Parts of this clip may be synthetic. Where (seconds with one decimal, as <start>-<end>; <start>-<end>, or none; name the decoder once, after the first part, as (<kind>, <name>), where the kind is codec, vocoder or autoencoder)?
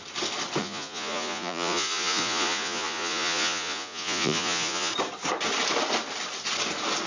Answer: 0.6-4.9 (vocoder, Vocos)